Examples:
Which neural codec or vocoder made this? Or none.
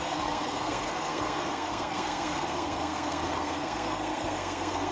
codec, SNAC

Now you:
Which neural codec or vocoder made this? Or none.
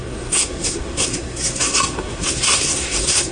codec, SNAC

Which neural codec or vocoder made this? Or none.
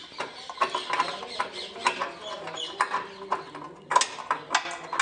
none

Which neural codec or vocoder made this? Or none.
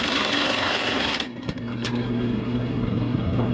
codec, SNAC